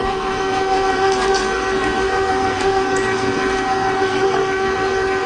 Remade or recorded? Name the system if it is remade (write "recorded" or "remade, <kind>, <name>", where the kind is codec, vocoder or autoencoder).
remade, codec, SNAC